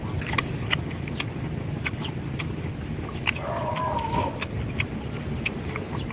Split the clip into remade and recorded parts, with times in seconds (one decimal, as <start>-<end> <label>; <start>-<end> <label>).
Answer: 0.0-6.1 recorded